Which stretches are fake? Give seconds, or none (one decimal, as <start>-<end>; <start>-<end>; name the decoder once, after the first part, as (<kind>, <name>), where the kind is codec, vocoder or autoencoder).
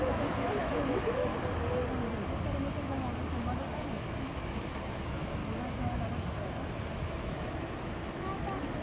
0.0-1.3 (autoencoder, DAC-VAE); 4.0-5.4; 6.8-8.8